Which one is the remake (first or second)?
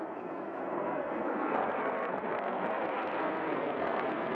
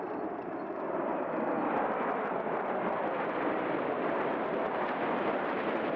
first